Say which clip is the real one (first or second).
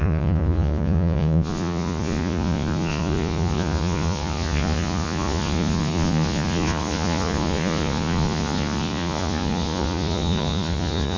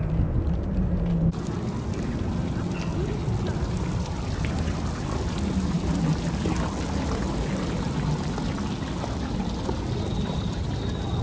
second